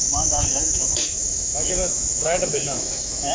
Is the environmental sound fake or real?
fake